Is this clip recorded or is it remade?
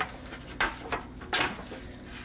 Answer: recorded